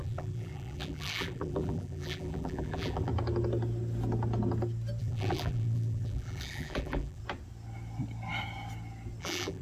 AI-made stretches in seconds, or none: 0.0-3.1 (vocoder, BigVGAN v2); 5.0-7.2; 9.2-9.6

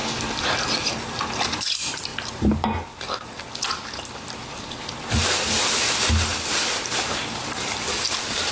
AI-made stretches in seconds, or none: none

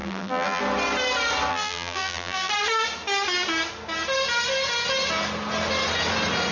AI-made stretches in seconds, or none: 0.0-0.6 (vocoder, BigVGAN v2); 1.5-2.5

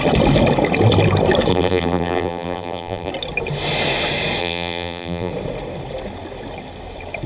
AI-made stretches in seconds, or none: 1.5-3.1 (vocoder, BigVGAN v2); 4.4-5.3

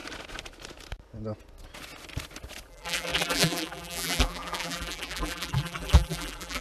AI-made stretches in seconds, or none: 2.7-6.6 (vocoder, BigVGAN v2)